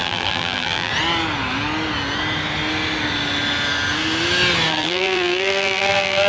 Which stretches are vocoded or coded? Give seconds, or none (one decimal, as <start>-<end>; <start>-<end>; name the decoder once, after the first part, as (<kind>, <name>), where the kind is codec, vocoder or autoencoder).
0.0-0.9 (vocoder, BigVGAN v2); 4.7-6.3

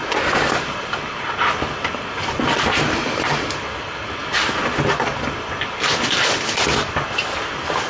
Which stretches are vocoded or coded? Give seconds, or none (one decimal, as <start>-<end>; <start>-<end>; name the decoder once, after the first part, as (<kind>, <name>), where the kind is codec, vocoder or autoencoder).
0.0-4.2 (vocoder, BigVGAN v2); 5.3-7.9

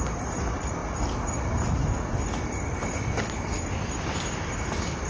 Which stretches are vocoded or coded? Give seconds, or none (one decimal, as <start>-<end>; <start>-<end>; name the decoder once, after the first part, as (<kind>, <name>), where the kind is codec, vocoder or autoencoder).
0.0-0.8 (vocoder, BigVGAN v2); 3.9-5.1

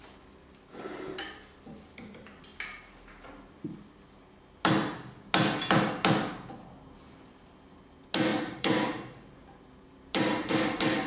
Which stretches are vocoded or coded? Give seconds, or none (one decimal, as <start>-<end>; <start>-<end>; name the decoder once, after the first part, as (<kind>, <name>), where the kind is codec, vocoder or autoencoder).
8.3-10.5 (vocoder, BigVGAN v2)

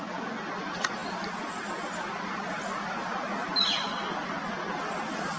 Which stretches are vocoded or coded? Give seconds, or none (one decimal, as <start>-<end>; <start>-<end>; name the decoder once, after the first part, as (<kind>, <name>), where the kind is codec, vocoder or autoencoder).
none